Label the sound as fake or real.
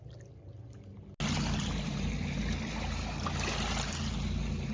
real